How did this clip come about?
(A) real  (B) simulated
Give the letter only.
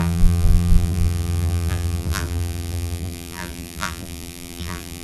B